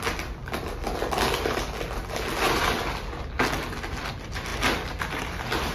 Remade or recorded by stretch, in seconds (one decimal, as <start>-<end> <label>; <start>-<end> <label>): 0.0-5.7 recorded